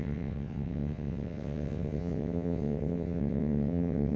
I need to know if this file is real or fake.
fake